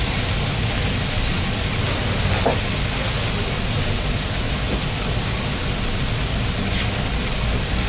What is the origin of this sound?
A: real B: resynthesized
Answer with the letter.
A